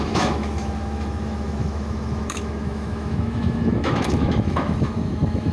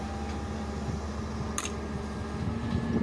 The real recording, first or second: second